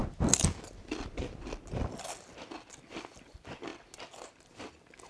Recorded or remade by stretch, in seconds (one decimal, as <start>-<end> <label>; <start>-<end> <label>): 0.0-5.1 recorded